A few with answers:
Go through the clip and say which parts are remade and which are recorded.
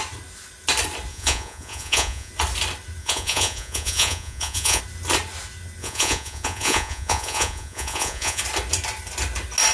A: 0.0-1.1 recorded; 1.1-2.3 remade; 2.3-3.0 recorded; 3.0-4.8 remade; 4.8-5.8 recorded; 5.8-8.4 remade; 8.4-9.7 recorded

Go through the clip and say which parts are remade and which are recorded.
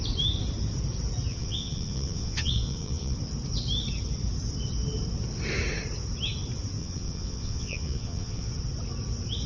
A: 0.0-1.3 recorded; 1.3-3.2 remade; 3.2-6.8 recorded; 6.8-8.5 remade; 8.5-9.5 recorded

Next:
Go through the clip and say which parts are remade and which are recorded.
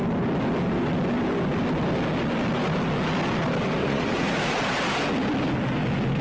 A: 0.0-3.8 recorded; 3.8-4.6 remade; 4.6-6.2 recorded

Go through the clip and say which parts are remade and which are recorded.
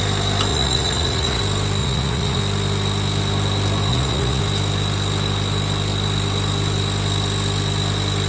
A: 0.0-0.5 recorded; 0.5-1.4 remade; 1.4-1.8 recorded; 1.8-2.4 remade; 2.4-3.9 recorded; 3.9-4.4 remade; 4.4-8.3 recorded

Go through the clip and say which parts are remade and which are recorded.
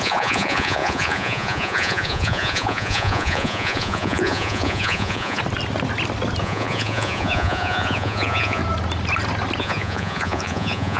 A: 0.0-5.4 remade; 5.4-6.4 recorded; 6.4-8.6 remade; 8.6-9.6 recorded; 9.6-11.0 remade